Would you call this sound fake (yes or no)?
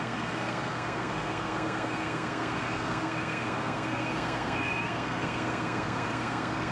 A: yes